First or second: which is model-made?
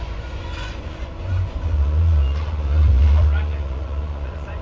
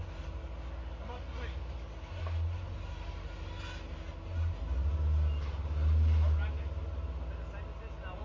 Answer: first